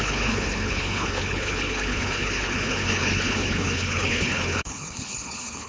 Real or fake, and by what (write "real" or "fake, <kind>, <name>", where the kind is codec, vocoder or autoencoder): fake, codec, HILCodec